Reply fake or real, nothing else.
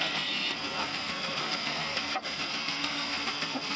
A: fake